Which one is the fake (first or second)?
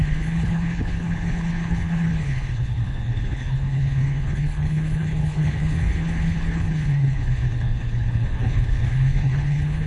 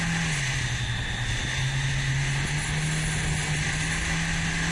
first